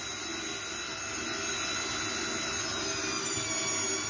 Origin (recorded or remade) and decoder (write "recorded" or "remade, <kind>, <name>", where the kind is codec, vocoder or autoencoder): recorded